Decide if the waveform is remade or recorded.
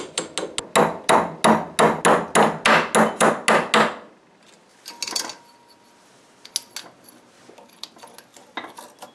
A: recorded